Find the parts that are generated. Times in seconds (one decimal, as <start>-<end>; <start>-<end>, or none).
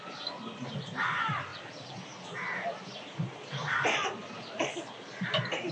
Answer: 1.5-4.9